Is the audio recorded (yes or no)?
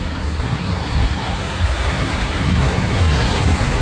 no